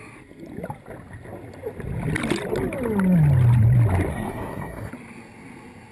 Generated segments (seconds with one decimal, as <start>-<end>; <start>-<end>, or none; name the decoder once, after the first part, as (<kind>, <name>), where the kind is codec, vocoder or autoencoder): 4.1-4.9 (codec, SNAC)